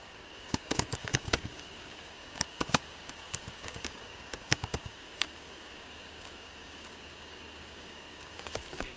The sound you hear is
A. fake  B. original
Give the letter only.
A